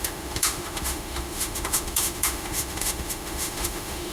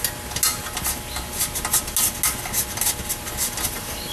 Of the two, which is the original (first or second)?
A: second